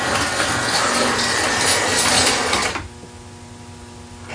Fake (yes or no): no